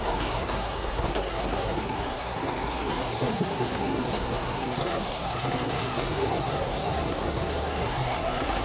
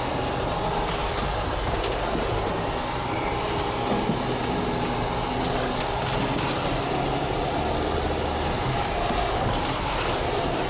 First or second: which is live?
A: second